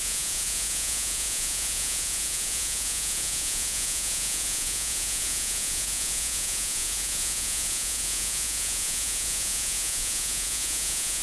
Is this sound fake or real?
fake